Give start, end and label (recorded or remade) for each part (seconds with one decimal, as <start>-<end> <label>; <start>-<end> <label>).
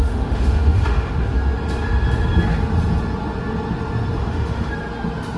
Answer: 0.0-1.3 remade; 1.3-4.2 recorded; 4.2-4.7 remade; 4.7-5.4 recorded